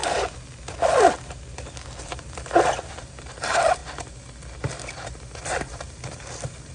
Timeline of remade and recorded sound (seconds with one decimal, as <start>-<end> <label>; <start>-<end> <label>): 0.0-2.0 recorded; 2.0-6.7 remade